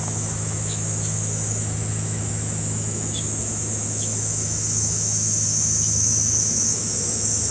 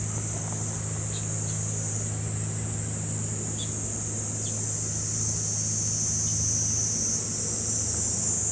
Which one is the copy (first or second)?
first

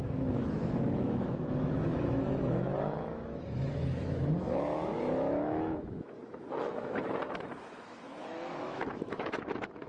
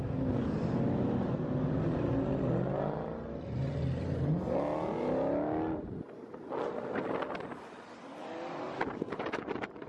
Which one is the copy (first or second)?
first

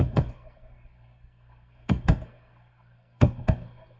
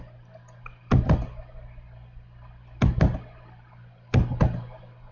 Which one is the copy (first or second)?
first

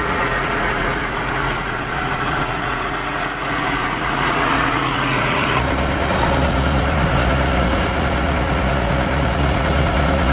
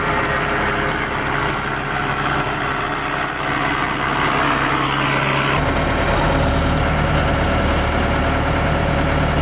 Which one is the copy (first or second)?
first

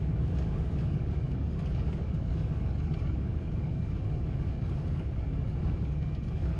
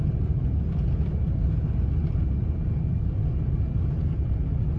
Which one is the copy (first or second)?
first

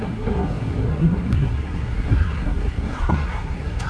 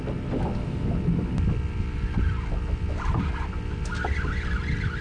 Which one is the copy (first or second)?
first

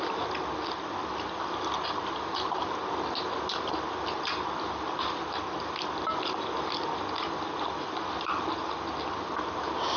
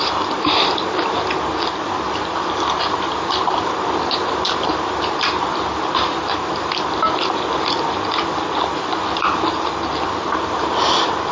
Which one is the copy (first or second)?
second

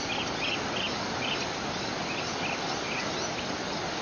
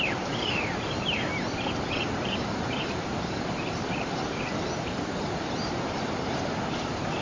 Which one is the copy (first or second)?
second